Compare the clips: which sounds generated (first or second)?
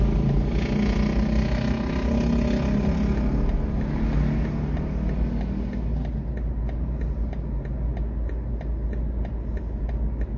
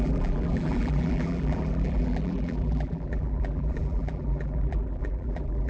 second